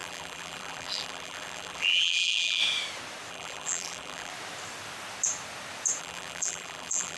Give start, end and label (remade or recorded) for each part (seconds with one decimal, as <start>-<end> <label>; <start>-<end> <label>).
0.0-2.6 remade; 2.6-3.3 recorded; 3.3-4.3 remade; 4.3-6.0 recorded; 6.0-7.2 remade